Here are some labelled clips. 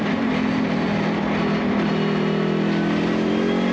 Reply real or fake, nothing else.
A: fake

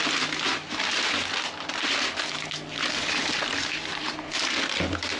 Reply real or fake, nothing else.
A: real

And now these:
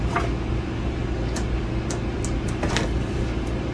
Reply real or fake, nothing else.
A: real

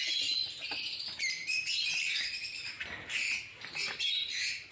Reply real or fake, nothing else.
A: real